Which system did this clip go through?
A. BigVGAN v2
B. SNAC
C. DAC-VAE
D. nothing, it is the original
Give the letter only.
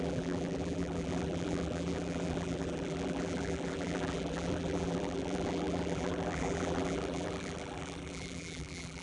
A